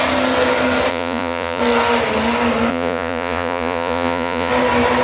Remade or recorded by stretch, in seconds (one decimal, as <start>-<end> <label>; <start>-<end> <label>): 0.0-0.9 recorded; 0.9-1.6 remade; 1.6-2.7 recorded; 2.7-4.5 remade; 4.5-5.0 recorded